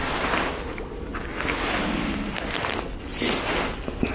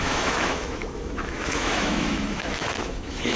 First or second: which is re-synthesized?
second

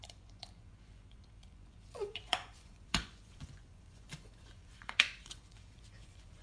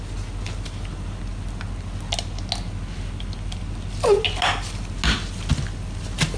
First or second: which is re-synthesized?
first